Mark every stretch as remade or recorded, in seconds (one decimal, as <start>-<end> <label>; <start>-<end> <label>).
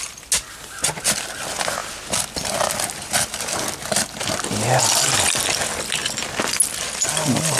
0.0-7.6 recorded